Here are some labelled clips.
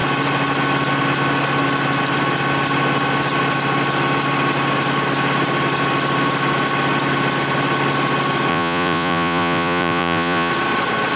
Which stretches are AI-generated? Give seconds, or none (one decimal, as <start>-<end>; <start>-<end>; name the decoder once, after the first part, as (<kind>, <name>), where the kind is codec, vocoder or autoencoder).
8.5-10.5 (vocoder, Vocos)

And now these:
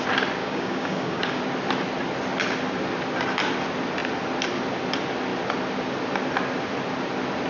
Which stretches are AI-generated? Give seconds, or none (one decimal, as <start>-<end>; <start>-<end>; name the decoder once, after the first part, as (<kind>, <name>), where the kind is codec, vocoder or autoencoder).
0.4-1.4 (codec, DAC)

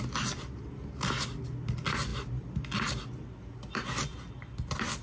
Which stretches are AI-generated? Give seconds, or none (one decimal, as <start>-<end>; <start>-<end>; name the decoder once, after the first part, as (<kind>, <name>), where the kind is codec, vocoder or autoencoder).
none

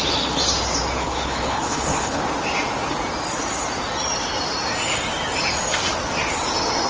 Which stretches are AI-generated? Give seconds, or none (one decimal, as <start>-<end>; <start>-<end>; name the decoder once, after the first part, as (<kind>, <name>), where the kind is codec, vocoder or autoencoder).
1.0-2.2 (codec, HILCodec)

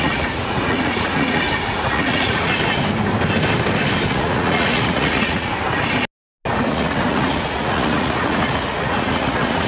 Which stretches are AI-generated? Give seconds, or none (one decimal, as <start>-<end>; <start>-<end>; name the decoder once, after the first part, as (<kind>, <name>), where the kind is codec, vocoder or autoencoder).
0.0-2.5 (vocoder, Vocos); 4.1-5.5; 6.7-9.7

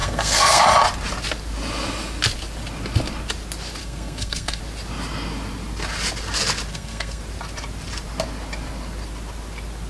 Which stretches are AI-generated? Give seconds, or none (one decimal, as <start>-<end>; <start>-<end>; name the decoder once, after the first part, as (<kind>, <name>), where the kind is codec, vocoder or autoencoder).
0.0-0.6 (codec, SNAC); 3.8-4.6; 6.7-7.2

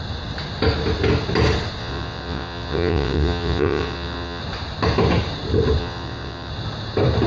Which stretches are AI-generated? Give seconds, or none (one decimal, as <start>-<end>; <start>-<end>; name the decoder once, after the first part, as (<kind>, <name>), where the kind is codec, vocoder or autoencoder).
1.8-4.4 (vocoder, WaveNeXt); 5.8-6.5